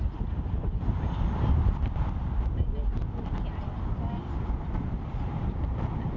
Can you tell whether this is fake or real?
real